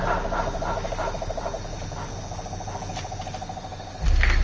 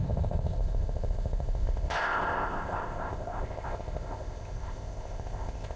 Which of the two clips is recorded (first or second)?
first